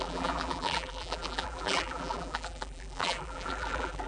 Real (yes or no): no